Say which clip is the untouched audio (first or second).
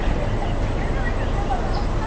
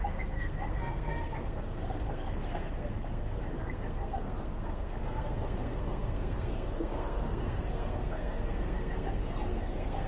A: first